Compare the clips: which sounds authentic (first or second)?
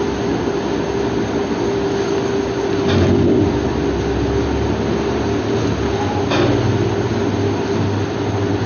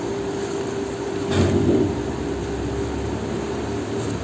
first